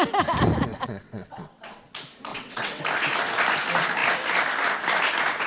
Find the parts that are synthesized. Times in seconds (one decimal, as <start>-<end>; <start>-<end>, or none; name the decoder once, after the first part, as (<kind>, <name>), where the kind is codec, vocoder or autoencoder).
0.7-1.9 (vocoder, WaveNeXt); 2.3-2.8